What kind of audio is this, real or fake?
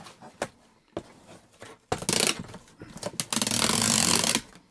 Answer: real